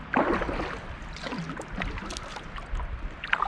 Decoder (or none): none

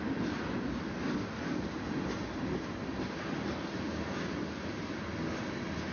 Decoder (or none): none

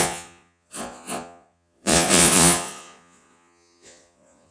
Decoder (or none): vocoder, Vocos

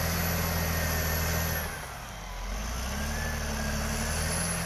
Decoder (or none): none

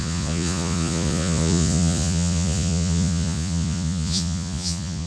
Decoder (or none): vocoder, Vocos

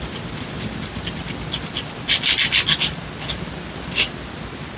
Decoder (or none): none